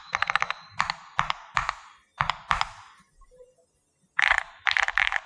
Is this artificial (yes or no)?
no